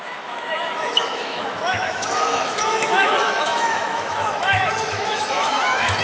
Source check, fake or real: fake